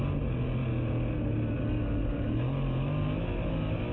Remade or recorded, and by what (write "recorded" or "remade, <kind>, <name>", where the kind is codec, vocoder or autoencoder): recorded